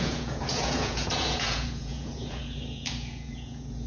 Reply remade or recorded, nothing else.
remade